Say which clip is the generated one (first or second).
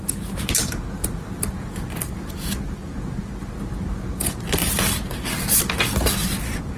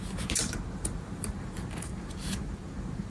second